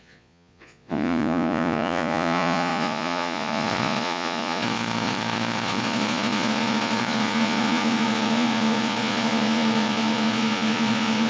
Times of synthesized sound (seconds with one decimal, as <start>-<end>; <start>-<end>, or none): 0.0-11.3

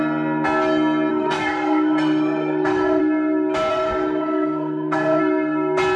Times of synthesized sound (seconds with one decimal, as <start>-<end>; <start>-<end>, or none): 1.1-3.0; 3.7-5.2

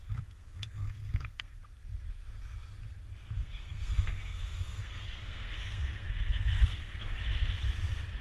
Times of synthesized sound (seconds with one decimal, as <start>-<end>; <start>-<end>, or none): 0.0-1.6; 3.4-7.1

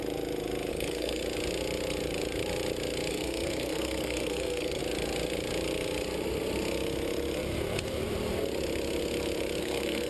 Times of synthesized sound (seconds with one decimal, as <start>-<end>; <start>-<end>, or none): 0.7-1.2; 3.1-4.8; 9.6-10.1

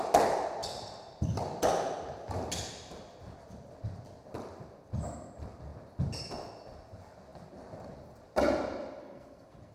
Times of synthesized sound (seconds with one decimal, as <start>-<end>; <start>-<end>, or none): 9.0-9.7

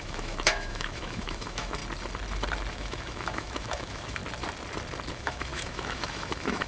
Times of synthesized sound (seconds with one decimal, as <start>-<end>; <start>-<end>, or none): 0.0-1.8; 2.7-4.2; 5.1-6.7

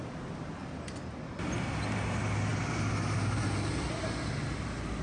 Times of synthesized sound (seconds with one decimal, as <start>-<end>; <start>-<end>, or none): none